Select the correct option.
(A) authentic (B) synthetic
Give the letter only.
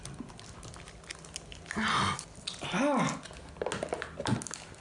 A